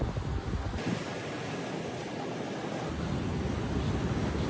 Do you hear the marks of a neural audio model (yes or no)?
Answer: no